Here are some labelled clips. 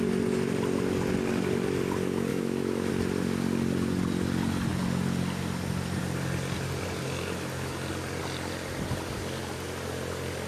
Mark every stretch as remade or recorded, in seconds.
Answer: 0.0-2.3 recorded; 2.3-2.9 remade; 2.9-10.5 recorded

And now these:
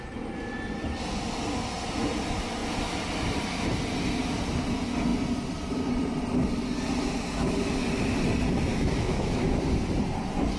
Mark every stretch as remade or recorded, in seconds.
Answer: 0.0-8.7 recorded; 8.7-9.6 remade; 9.6-10.6 recorded

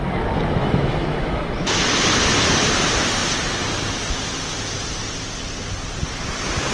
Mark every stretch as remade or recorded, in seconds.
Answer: 0.0-0.6 recorded; 0.6-1.8 remade; 1.8-6.7 recorded